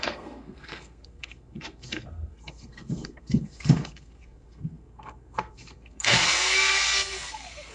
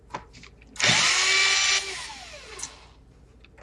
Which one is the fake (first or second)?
first